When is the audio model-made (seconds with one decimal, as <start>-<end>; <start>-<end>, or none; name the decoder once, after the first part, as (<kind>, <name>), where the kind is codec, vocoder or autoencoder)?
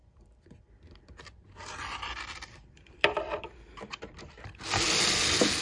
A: 0.0-3.4 (vocoder, BigVGAN v2)